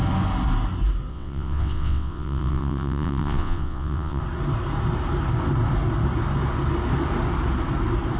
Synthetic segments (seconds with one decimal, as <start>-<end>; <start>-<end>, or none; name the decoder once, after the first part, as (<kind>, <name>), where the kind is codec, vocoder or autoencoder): 1.1-4.2 (vocoder, WaveNeXt)